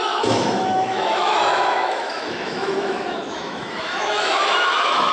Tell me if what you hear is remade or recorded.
remade